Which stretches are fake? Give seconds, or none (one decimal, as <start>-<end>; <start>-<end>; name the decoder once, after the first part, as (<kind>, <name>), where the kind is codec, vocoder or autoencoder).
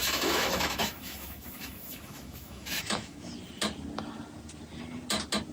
0.0-3.3 (autoencoder, DAC-VAE)